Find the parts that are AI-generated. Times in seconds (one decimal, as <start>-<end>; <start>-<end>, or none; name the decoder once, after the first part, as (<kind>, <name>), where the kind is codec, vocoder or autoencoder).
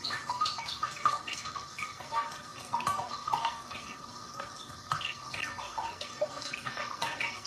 0.0-7.5 (codec, SNAC)